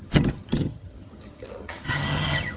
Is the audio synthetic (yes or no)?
yes